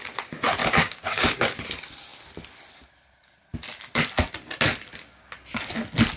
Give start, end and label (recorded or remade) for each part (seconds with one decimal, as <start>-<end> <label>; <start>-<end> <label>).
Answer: 0.0-0.6 recorded; 0.6-1.6 remade; 1.6-6.2 recorded